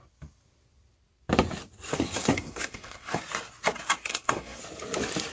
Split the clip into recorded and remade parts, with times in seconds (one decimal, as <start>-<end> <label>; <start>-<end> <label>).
0.0-1.9 recorded; 1.9-3.2 remade; 3.2-4.1 recorded; 4.1-4.6 remade; 4.6-5.3 recorded